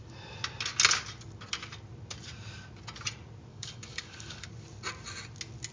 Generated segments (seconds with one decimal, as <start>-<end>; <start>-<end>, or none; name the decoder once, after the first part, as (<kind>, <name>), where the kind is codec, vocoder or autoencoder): 3.5-4.5 (codec, DAC)